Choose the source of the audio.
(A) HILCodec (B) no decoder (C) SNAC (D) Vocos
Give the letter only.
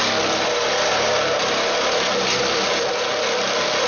B